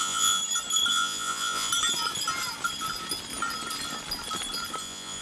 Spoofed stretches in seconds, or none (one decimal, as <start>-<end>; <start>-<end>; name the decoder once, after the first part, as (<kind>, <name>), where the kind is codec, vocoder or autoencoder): 0.0-0.4 (vocoder, Vocos); 0.9-1.7; 4.8-5.2